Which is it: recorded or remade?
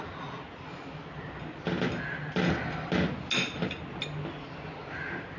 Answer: recorded